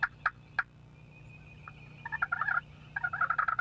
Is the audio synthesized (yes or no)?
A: no